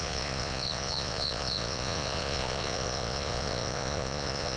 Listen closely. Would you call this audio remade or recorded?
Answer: remade